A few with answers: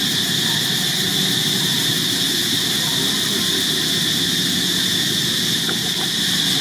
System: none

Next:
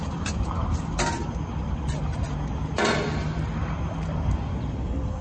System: none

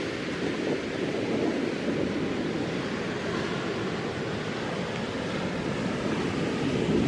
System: none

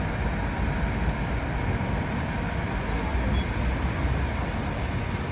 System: none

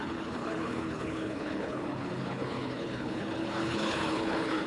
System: codec, HILCodec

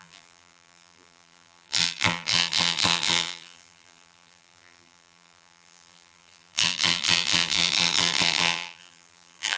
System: vocoder, BigVGAN v2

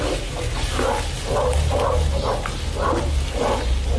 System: none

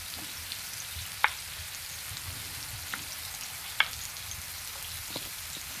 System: none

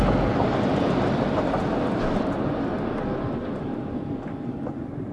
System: none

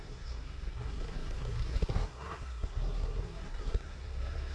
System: codec, SNAC